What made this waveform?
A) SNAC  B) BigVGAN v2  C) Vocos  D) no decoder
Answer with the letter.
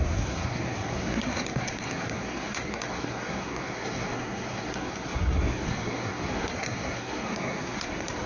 A